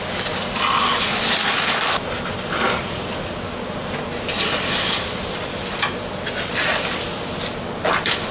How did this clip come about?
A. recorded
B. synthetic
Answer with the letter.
A